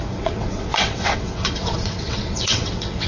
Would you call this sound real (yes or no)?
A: no